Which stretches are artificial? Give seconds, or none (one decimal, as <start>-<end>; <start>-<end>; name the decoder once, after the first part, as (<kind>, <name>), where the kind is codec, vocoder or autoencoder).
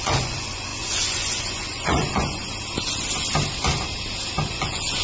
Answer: 0.0-2.4 (vocoder, Vocos); 4.5-5.0